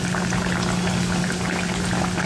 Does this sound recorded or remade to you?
recorded